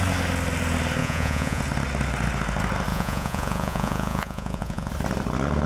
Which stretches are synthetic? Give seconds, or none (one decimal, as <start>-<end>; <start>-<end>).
1.0-1.6; 2.9-4.9